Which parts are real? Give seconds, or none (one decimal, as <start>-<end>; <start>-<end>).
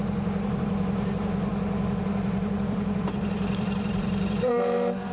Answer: 1.5-2.0